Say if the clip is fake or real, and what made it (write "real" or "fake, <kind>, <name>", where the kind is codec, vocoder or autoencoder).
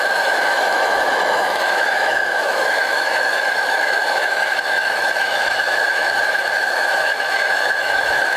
fake, autoencoder, DAC-VAE